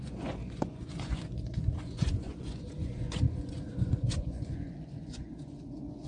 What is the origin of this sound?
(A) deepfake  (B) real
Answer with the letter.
A